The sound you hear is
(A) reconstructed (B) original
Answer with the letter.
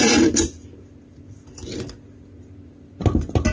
B